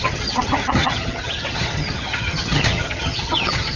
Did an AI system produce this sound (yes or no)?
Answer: yes